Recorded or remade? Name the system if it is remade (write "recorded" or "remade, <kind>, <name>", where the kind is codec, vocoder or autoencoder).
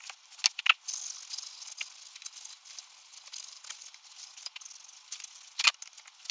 recorded